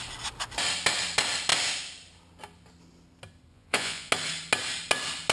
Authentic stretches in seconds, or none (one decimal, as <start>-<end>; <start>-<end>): 0.0-3.5; 4.1-5.3